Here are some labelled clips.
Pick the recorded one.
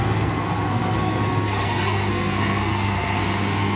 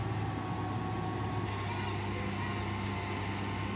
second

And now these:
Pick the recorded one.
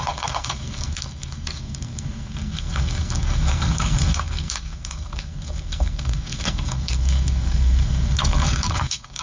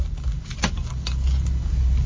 second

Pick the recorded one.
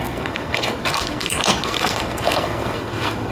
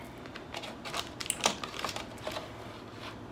second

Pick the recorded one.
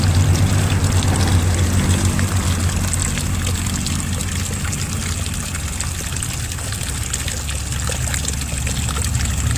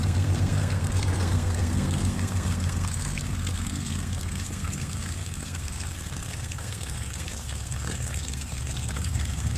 first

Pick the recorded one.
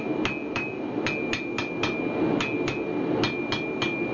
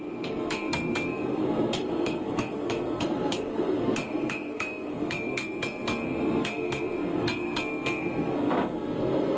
first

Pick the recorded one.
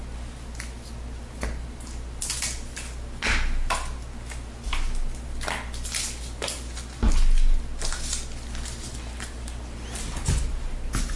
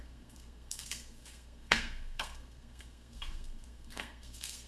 first